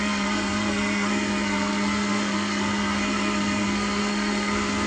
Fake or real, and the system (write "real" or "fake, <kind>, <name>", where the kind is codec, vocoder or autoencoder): fake, codec, SNAC